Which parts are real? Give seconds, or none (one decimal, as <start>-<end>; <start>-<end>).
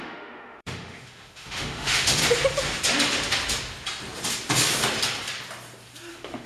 2.2-6.1